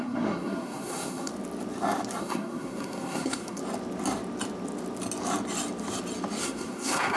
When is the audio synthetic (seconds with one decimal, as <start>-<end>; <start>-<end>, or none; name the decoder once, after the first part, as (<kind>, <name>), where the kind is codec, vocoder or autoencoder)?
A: 0.0-1.3 (codec, SNAC); 2.2-3.6; 6.4-7.2